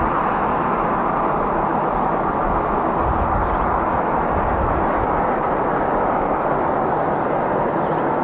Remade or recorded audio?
recorded